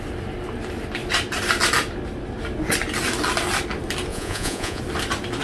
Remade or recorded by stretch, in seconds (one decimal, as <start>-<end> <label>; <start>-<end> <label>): 0.0-4.1 recorded; 4.1-4.8 remade; 4.8-5.4 recorded